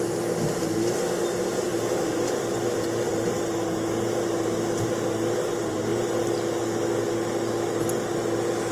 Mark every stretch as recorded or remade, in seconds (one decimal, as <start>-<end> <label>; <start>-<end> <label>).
0.0-8.7 recorded

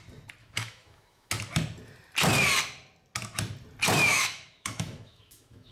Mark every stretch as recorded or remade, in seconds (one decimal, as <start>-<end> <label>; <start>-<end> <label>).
0.0-0.4 recorded; 0.4-1.3 remade; 1.3-4.1 recorded; 4.1-5.7 remade

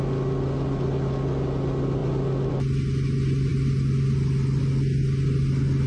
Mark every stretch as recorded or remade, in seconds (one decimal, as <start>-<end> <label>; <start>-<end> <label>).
0.0-5.9 recorded

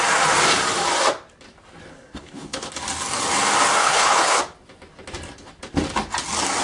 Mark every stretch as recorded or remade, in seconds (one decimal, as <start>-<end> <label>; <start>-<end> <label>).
0.0-1.9 recorded; 1.9-2.7 remade; 2.7-3.8 recorded; 3.8-4.4 remade; 4.4-6.6 recorded